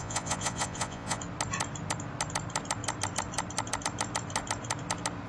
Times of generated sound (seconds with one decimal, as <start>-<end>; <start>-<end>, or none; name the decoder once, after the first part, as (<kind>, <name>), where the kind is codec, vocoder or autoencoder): 0.0-1.2 (vocoder, Vocos)